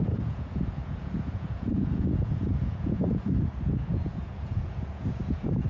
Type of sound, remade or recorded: remade